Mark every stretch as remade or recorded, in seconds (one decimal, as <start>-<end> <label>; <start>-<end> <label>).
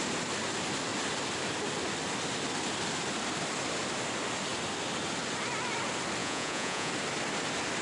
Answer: 0.0-6.2 recorded; 6.2-6.9 remade; 6.9-7.8 recorded